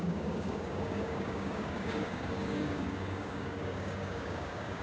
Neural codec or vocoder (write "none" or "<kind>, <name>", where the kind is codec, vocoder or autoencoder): codec, DAC